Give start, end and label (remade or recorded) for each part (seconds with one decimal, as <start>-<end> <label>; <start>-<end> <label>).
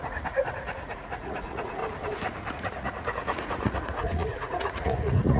0.0-1.8 remade; 1.8-2.5 recorded; 2.5-5.4 remade